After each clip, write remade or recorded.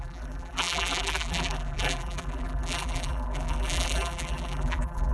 remade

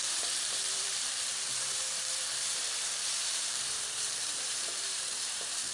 remade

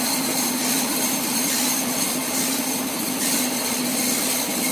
recorded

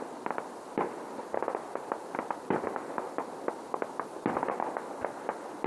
recorded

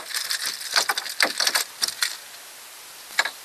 recorded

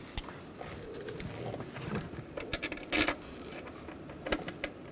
recorded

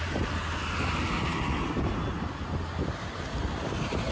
recorded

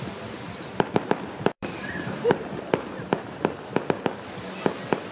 remade